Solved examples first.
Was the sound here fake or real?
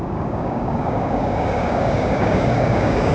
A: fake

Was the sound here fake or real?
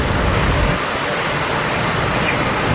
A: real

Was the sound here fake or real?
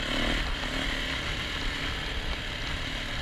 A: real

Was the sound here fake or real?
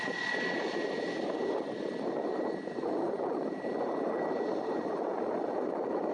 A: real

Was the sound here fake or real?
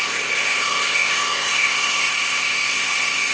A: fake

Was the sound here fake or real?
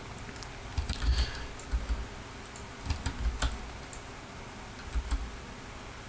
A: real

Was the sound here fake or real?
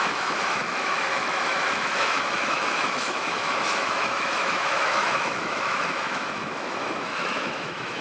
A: fake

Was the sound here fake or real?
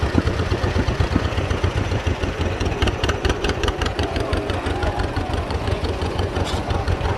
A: fake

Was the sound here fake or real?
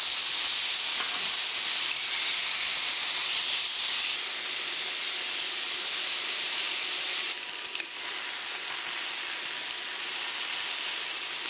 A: real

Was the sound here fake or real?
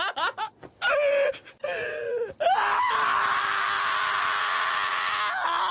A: real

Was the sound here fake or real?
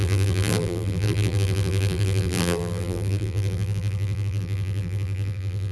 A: fake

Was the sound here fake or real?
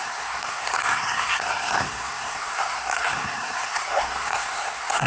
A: fake